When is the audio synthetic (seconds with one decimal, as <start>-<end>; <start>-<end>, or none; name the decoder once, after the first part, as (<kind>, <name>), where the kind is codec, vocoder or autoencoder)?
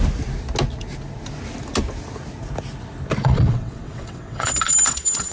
3.2-5.3 (vocoder, WaveNeXt)